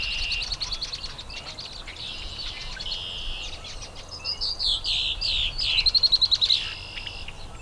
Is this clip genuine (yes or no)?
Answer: yes